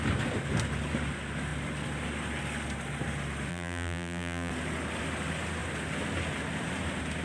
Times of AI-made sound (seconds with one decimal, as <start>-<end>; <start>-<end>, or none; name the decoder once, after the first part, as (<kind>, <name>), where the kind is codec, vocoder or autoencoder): 3.5-4.5 (vocoder, BigVGAN v2)